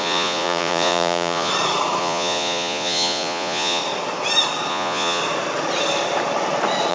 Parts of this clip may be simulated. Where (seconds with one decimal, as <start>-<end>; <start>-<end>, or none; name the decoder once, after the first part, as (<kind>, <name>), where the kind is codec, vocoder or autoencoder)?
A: 0.0-1.5 (vocoder, Vocos); 2.0-3.8; 4.7-5.2